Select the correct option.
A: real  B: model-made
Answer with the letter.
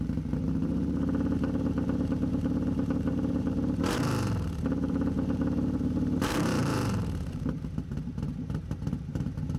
B